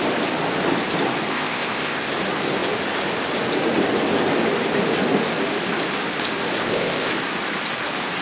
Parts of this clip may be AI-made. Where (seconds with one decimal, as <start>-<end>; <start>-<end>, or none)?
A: 1.3-2.1; 6.6-7.1